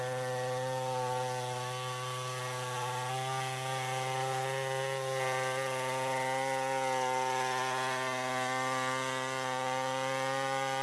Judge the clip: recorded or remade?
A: recorded